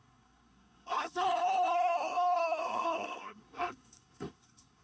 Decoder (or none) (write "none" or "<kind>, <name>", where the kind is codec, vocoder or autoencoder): codec, SNAC